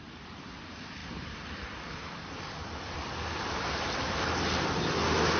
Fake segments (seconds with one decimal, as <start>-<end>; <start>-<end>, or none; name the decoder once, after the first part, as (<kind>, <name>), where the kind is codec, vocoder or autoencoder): 1.0-4.0 (vocoder, BigVGAN v2)